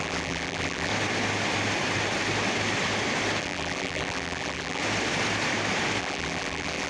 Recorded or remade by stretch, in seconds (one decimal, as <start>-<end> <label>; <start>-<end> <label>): 0.0-0.9 remade; 0.9-3.4 recorded; 3.4-4.8 remade; 4.8-6.0 recorded; 6.0-6.9 remade